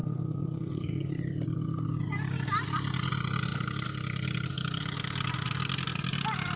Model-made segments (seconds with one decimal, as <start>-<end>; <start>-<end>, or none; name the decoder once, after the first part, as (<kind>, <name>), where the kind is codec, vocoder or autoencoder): 0.0-1.2 (codec, SNAC)